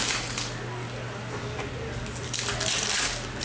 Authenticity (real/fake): real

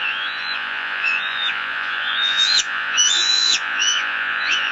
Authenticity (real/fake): fake